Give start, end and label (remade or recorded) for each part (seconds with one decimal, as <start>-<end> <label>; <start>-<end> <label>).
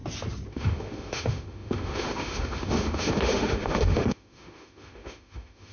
0.0-0.5 recorded; 0.5-5.7 remade